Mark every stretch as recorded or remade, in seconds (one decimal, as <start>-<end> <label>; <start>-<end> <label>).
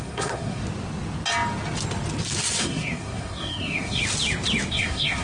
0.0-0.6 remade; 0.6-2.6 recorded; 2.6-4.0 remade; 4.0-4.7 recorded; 4.7-5.2 remade